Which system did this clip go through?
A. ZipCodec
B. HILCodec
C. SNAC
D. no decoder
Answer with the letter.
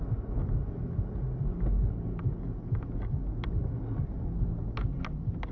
D